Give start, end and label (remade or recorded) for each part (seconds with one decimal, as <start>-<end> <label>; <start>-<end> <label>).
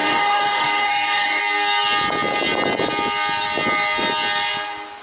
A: 0.0-1.4 remade; 1.4-5.0 recorded